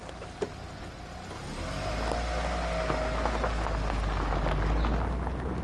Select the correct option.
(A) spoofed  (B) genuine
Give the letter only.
B